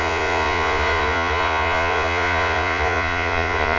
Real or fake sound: fake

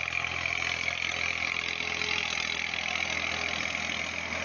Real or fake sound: real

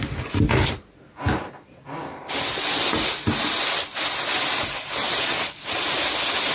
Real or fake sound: real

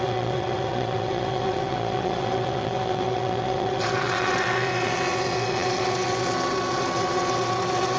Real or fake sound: fake